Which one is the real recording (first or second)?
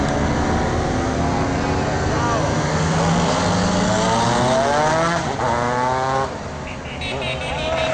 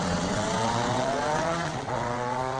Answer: first